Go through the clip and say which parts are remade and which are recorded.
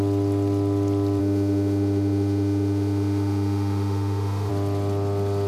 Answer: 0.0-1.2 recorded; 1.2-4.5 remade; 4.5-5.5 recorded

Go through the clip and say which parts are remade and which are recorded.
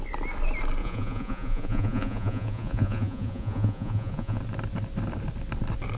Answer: 0.0-0.8 recorded; 0.8-4.4 remade; 4.4-6.0 recorded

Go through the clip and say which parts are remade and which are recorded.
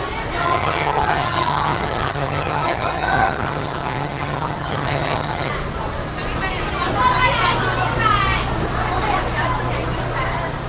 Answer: 0.0-0.4 recorded; 0.4-5.5 remade; 5.5-10.7 recorded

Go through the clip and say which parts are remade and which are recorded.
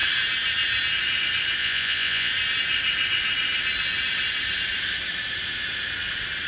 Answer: 0.0-1.6 recorded; 1.6-2.3 remade; 2.3-6.5 recorded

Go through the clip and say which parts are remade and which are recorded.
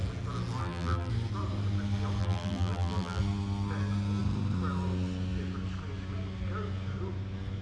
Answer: 0.0-0.6 recorded; 0.6-1.1 remade; 1.1-2.2 recorded; 2.2-3.2 remade; 3.2-7.6 recorded